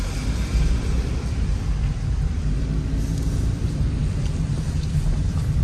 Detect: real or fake fake